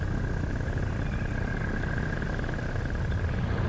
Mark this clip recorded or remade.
recorded